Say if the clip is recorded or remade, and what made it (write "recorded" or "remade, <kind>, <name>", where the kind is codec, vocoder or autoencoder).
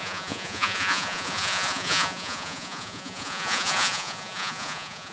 remade, vocoder, Vocos